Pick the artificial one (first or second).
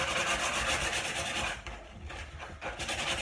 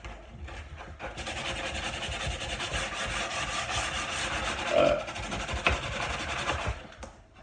first